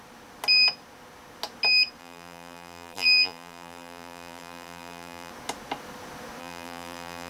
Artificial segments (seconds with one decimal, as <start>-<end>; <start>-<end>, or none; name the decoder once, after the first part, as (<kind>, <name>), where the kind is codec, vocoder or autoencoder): 2.0-5.3 (vocoder, BigVGAN v2); 6.4-7.3